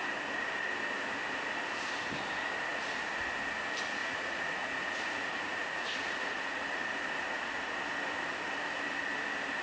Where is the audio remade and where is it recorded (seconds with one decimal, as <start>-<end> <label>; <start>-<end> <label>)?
0.0-4.0 recorded; 4.0-7.7 remade; 7.7-9.6 recorded